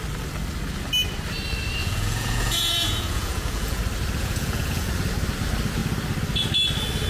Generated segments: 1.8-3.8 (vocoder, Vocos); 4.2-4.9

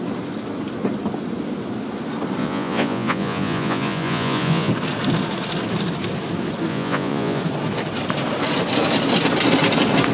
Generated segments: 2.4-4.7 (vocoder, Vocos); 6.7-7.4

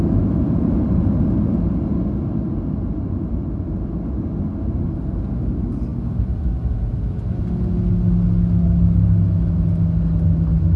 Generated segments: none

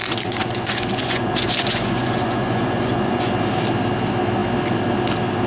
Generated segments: 0.0-3.3 (vocoder, Vocos)